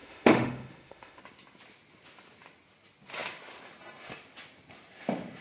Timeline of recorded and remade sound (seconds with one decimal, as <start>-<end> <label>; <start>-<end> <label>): 0.0-1.2 remade; 1.2-5.4 recorded